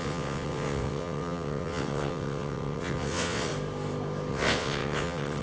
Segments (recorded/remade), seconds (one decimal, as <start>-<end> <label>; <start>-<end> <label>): 0.0-3.5 remade; 3.5-4.3 recorded; 4.3-5.4 remade